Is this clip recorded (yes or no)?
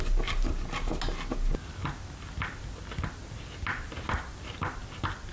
yes